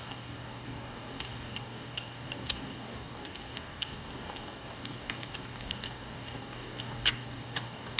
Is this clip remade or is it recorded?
remade